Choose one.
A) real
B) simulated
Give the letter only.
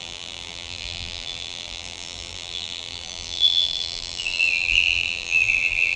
B